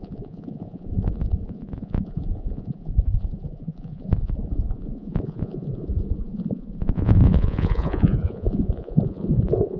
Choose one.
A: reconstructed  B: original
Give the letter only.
A